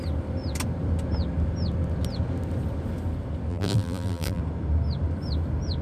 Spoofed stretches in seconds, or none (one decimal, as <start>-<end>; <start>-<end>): 3.5-4.4